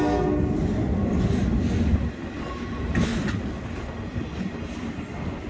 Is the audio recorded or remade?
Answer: recorded